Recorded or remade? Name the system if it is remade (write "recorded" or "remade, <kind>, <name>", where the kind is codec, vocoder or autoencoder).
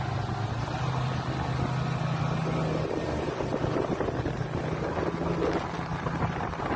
recorded